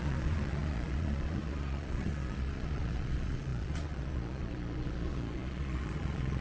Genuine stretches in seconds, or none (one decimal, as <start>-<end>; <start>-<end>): none